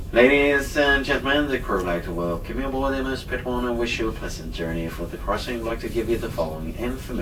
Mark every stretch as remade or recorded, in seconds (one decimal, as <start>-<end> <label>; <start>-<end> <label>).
0.0-1.2 remade; 1.2-3.9 recorded; 3.9-5.7 remade; 5.7-7.2 recorded